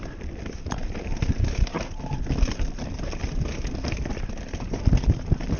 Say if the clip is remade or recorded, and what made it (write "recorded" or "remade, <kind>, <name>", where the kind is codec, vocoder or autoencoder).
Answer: recorded